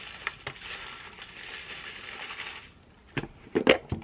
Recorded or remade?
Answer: recorded